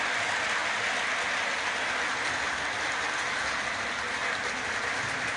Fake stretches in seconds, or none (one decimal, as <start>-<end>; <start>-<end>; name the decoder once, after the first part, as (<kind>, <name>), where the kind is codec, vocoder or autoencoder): none